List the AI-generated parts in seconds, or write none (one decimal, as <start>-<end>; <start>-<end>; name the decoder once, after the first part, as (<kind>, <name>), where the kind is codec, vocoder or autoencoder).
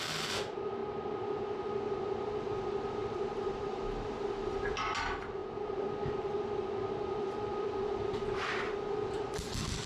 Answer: 0.0-0.8 (vocoder, BigVGAN v2); 2.4-9.9